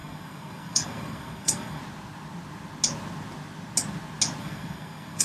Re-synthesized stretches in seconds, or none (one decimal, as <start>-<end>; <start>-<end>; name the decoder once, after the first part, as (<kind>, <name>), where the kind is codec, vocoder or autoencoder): 0.0-1.8 (codec, SNAC); 4.4-5.2